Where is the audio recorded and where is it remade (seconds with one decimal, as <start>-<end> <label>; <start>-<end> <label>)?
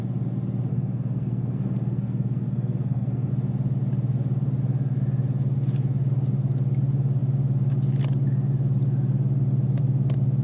0.0-0.7 recorded; 0.7-3.3 remade; 3.3-10.4 recorded